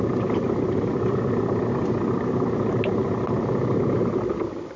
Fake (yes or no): no